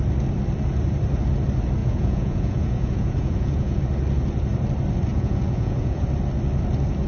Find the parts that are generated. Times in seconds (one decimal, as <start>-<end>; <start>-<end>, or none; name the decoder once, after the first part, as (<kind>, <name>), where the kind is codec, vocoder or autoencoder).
1.8-3.8 (vocoder, Vocos); 5.1-6.0